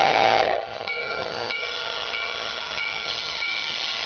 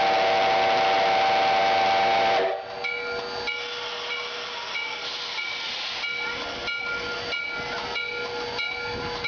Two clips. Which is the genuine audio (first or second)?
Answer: second